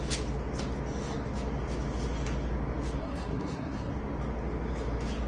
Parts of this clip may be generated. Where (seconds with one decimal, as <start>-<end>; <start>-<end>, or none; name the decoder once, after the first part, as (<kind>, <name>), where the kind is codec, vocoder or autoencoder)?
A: 3.0-3.9 (codec, SNAC)